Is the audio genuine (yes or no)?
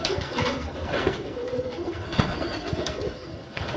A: no